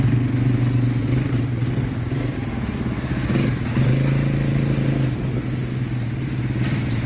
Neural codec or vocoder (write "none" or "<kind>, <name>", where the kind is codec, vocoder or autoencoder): none